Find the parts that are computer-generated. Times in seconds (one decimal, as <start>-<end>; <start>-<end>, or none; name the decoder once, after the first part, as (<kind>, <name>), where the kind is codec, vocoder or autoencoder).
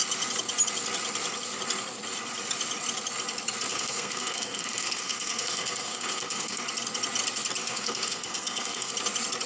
3.7-6.6 (codec, SNAC); 7.6-8.9